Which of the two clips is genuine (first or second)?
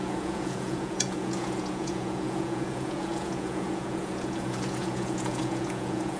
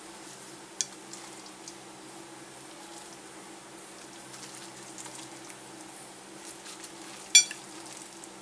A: second